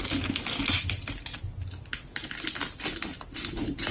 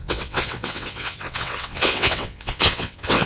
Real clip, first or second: first